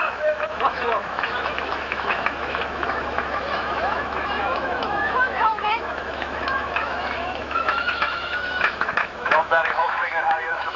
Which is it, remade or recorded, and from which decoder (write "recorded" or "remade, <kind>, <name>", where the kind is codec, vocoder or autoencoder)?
remade, autoencoder, DAC-VAE